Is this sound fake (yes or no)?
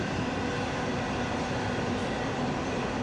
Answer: no